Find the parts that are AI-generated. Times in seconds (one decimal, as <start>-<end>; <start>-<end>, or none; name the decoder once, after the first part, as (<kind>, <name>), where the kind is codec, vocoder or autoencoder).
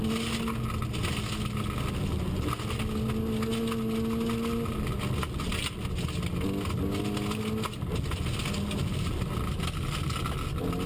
none